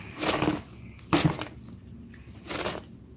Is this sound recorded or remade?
recorded